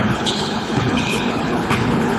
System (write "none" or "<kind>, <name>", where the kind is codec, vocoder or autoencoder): codec, HILCodec